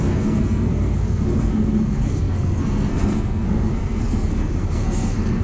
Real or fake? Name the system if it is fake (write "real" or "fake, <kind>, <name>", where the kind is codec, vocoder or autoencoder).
fake, codec, SNAC